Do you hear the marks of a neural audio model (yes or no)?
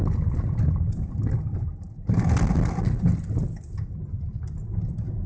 no